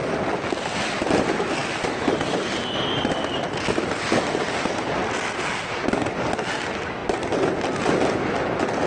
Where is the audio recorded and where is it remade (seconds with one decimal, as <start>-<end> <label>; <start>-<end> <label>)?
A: 0.0-8.9 recorded